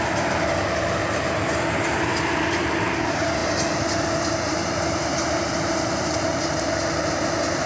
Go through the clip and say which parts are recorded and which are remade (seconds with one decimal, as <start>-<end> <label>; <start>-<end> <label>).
0.0-1.0 remade; 1.0-1.8 recorded; 1.8-7.7 remade